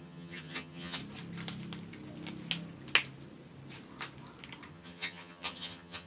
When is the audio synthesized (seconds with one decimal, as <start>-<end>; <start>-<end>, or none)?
0.0-1.0; 4.7-6.1